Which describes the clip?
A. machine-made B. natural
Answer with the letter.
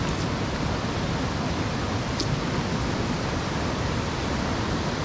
B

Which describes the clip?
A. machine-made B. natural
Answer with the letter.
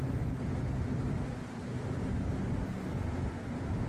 B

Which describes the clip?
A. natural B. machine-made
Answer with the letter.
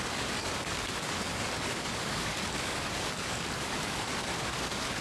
B